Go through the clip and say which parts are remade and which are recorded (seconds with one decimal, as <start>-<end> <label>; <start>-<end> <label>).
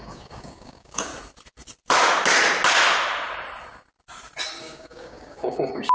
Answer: 0.0-1.1 remade; 1.1-4.6 recorded; 4.6-5.9 remade